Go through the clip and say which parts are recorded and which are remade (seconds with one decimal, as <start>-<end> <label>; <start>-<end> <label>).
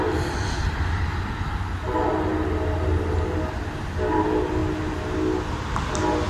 0.0-6.3 recorded